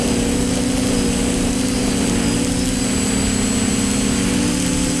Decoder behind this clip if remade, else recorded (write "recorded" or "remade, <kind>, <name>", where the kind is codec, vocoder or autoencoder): recorded